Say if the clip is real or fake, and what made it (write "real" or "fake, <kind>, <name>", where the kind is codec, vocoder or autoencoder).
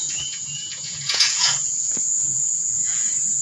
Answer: fake, vocoder, Vocos